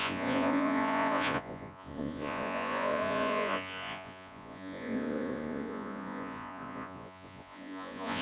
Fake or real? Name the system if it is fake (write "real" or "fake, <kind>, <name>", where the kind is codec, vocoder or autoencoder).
fake, vocoder, Vocos